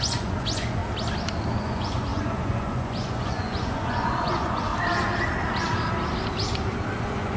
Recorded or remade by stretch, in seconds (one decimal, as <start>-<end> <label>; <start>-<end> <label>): 0.0-0.8 remade; 0.8-1.6 recorded; 1.6-4.7 remade; 4.7-7.0 recorded; 7.0-7.4 remade

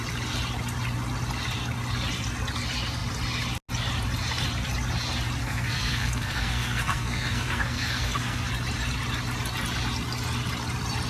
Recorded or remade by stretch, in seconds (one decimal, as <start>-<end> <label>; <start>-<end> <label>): 0.0-5.4 recorded; 5.4-8.5 remade; 8.5-11.1 recorded

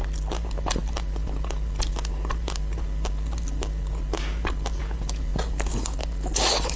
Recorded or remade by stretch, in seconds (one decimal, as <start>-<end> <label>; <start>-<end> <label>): 0.0-6.8 recorded

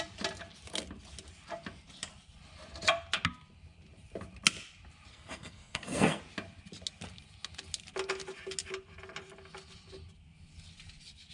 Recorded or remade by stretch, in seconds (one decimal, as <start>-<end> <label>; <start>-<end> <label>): 0.0-5.1 recorded; 5.1-6.2 remade; 6.2-11.3 recorded

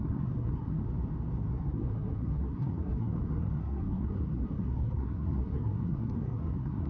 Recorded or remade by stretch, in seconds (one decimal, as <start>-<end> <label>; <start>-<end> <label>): 0.0-0.8 remade; 0.8-1.5 recorded; 1.5-6.9 remade

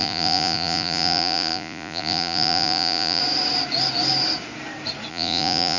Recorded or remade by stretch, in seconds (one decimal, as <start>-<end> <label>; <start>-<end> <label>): 0.0-3.2 remade; 3.2-5.1 recorded; 5.1-5.8 remade

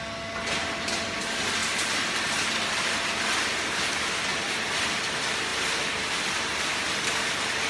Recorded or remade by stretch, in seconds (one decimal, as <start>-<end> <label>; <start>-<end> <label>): 0.0-7.7 recorded